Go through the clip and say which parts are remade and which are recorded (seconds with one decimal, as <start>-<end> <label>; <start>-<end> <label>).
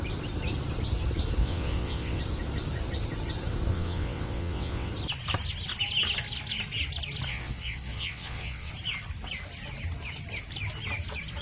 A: 0.0-1.4 recorded; 1.4-2.2 remade; 2.2-3.7 recorded; 3.7-4.9 remade; 4.9-7.3 recorded; 7.3-8.7 remade; 8.7-11.4 recorded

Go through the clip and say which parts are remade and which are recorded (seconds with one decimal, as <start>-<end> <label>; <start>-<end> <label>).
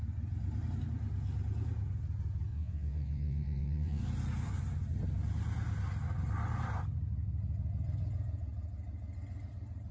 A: 0.0-2.5 recorded; 2.5-4.0 remade; 4.0-9.9 recorded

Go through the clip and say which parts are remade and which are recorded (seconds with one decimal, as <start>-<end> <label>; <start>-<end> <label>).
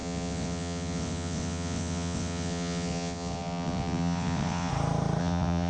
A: 0.0-4.7 remade; 4.7-5.2 recorded; 5.2-5.7 remade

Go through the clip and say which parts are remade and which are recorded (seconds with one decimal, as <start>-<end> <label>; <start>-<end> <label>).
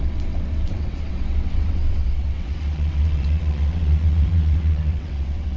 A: 0.0-5.6 remade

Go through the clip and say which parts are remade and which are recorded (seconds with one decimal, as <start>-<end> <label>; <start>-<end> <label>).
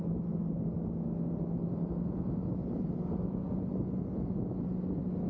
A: 0.0-5.3 recorded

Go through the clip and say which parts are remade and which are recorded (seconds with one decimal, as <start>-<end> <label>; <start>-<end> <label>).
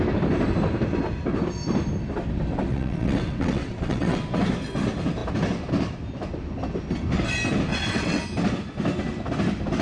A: 0.0-2.7 recorded; 2.7-4.2 remade; 4.2-7.7 recorded; 7.7-8.2 remade; 8.2-9.8 recorded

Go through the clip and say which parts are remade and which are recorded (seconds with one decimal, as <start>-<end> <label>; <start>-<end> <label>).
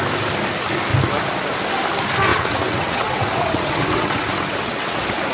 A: 0.0-2.3 recorded; 2.3-5.3 remade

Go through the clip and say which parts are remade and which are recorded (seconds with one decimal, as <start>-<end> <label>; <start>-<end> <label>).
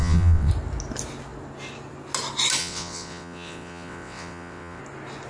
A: 0.0-0.5 remade; 0.5-2.6 recorded; 2.6-4.8 remade; 4.8-5.3 recorded